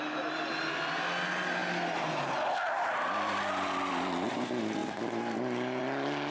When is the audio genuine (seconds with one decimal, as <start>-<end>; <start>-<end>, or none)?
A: 0.0-6.3